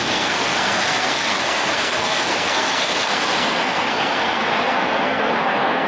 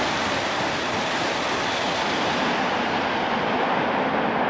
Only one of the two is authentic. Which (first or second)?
second